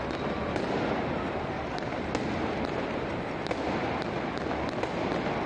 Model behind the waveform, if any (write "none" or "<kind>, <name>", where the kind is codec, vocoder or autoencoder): none